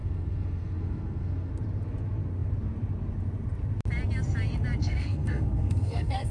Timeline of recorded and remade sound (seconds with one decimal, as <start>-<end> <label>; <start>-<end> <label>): 0.0-1.5 remade; 1.5-4.8 recorded; 4.8-6.3 remade

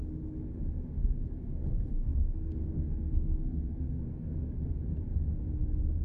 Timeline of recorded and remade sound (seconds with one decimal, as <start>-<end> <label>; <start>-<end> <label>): 0.0-1.0 recorded; 1.0-4.6 remade; 4.6-6.0 recorded

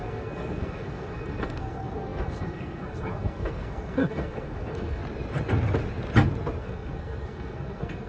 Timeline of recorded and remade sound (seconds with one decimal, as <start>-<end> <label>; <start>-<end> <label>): 0.0-5.0 remade; 5.0-6.6 recorded; 6.6-8.1 remade

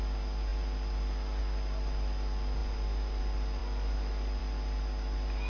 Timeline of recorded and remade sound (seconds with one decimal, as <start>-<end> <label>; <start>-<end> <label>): 0.0-5.5 recorded

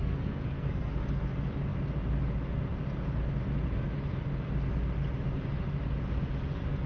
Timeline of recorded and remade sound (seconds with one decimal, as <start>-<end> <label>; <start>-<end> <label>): 0.0-0.9 remade; 0.9-6.9 recorded

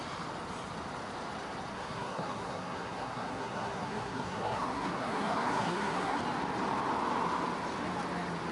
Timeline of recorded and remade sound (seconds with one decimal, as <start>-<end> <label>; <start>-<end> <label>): 0.0-1.7 recorded; 1.7-6.2 remade; 6.2-8.5 recorded

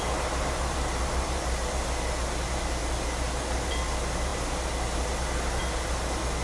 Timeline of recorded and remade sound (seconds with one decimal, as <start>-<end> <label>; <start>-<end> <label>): 0.0-6.4 recorded

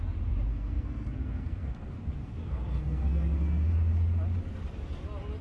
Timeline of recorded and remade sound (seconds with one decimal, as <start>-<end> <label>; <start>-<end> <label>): 0.0-0.5 recorded; 0.5-3.7 remade; 3.7-5.4 recorded